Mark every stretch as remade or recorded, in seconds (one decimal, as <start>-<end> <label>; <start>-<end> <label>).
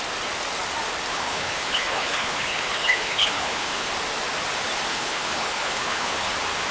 0.0-1.1 recorded; 1.1-3.9 remade; 3.9-4.9 recorded; 4.9-6.3 remade; 6.3-6.7 recorded